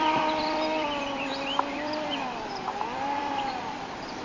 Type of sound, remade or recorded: remade